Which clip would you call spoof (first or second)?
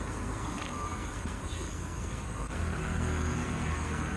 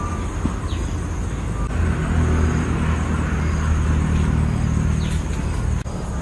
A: first